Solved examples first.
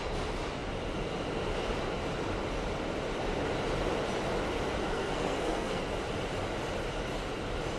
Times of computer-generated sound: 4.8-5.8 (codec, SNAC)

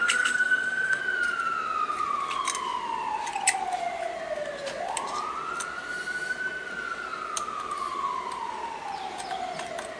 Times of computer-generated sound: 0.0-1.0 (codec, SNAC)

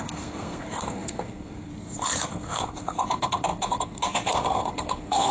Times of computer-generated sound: 0.0-1.7 (codec, SNAC); 2.3-5.3

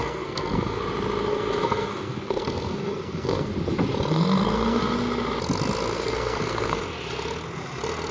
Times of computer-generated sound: 0.0-0.8 (codec, SNAC); 1.3-3.5; 4.1-4.8; 5.9-6.8

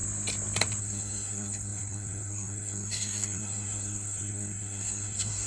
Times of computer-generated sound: 0.8-5.5 (codec, SNAC)

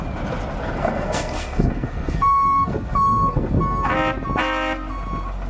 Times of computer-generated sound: 0.6-3.9 (codec, SNAC)

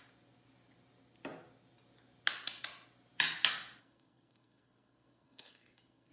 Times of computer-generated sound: 3.8-6.1 (codec, SNAC)

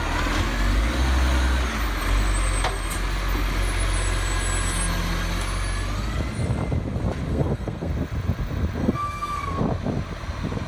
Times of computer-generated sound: 7.3-7.9 (codec, SNAC); 8.8-9.6